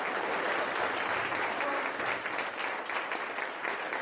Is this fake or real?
real